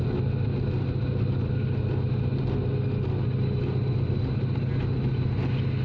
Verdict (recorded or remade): recorded